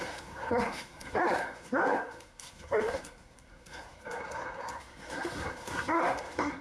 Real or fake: fake